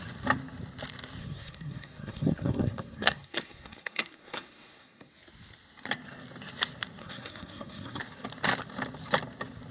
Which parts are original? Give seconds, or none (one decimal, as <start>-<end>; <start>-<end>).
0.0-1.2; 5.1-7.0; 8.0-9.7